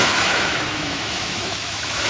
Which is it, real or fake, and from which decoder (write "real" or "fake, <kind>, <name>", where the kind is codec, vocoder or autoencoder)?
fake, autoencoder, DAC-VAE